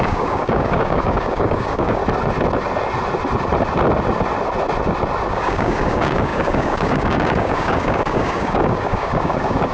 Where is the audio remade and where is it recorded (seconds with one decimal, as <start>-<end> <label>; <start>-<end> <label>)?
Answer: 0.0-2.0 remade; 2.0-5.3 recorded; 5.3-9.7 remade